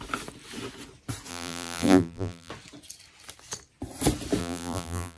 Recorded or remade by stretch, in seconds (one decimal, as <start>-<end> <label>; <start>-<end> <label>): 0.0-1.3 recorded; 1.3-2.5 remade; 2.5-4.4 recorded; 4.4-5.2 remade